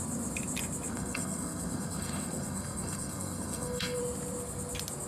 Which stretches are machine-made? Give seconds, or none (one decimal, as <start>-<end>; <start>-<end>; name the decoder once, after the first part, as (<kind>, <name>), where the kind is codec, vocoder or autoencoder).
0.9-4.0 (codec, SNAC)